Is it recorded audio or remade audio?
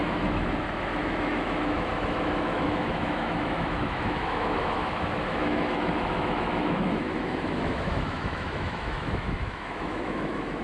remade